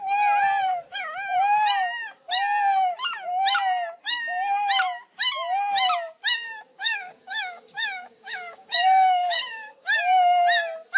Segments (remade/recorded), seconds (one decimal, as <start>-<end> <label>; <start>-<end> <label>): 0.0-6.7 recorded; 6.7-10.0 remade; 10.0-11.0 recorded